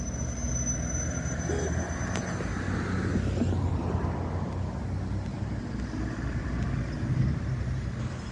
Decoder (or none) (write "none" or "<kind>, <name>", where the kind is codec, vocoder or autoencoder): none